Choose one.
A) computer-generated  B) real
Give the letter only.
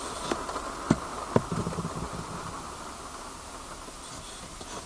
B